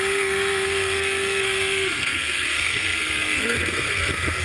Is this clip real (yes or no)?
no